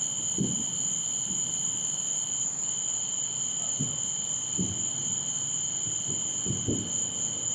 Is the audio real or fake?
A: real